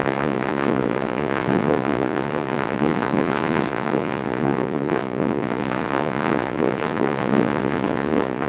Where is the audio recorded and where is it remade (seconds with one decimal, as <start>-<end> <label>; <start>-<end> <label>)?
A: 0.0-8.5 remade

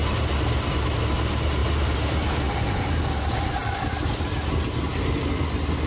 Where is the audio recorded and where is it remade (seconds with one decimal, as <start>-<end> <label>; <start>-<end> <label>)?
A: 0.0-5.9 recorded

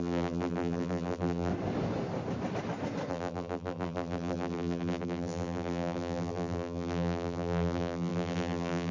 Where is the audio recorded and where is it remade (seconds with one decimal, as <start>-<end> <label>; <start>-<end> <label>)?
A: 0.0-1.5 remade; 1.5-3.1 recorded; 3.1-8.9 remade